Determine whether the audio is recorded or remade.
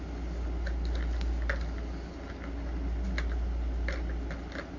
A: recorded